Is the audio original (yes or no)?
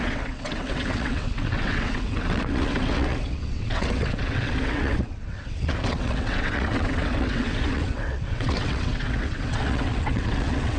no